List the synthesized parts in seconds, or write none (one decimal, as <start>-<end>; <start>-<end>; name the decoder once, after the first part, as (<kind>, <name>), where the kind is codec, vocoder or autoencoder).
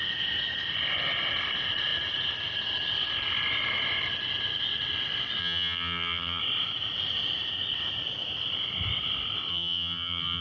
5.4-6.4 (vocoder, HiFi-GAN); 9.5-10.4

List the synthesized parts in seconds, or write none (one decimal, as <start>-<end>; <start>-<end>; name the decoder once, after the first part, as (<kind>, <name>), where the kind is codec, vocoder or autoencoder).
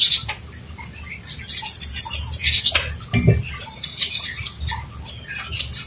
none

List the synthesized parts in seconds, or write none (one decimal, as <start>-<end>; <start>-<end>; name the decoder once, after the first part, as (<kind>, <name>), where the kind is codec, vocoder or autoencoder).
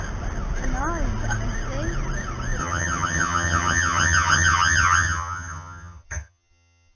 2.6-7.0 (vocoder, HiFi-GAN)